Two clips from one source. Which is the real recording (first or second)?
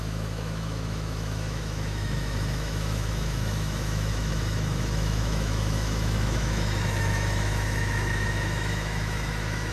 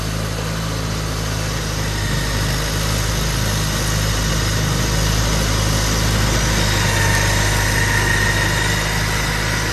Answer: second